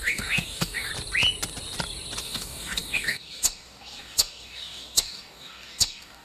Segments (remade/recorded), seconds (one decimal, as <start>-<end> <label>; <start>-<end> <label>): 0.0-0.9 remade; 0.9-2.2 recorded; 2.2-6.2 remade